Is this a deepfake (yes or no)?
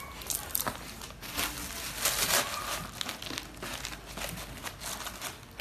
no